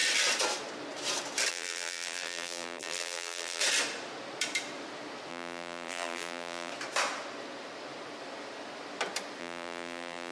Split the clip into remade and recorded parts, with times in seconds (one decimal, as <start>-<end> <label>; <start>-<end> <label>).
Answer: 0.0-1.5 recorded; 1.5-3.6 remade; 3.6-5.3 recorded; 5.3-6.7 remade; 6.7-9.4 recorded; 9.4-10.3 remade